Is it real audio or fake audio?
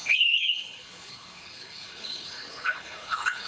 fake